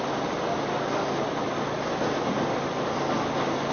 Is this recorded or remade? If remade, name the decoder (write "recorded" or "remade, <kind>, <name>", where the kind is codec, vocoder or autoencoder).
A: recorded